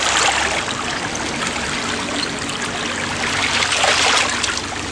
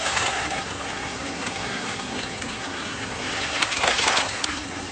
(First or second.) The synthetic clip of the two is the second